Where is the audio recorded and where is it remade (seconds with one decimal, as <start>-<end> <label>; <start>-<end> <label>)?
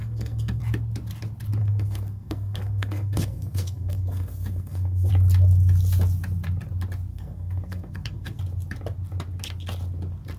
0.0-0.6 remade; 0.6-1.6 recorded; 1.6-5.1 remade; 5.1-7.1 recorded; 7.1-8.4 remade; 8.4-10.4 recorded